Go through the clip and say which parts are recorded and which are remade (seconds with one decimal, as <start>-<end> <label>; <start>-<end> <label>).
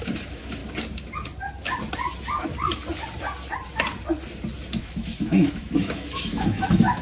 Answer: 0.0-0.6 remade; 0.6-4.8 recorded; 4.8-7.0 remade